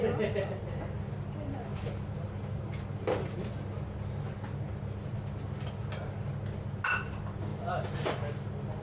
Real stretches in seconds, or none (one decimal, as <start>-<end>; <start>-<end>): 0.0-8.8